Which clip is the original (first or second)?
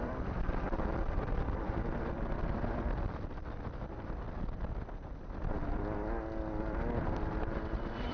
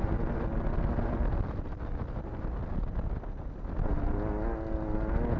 second